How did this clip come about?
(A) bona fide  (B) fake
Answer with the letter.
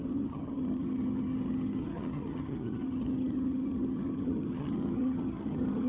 B